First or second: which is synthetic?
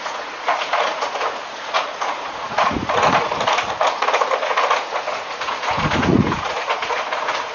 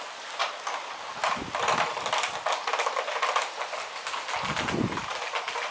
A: first